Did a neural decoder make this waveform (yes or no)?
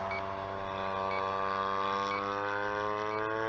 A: no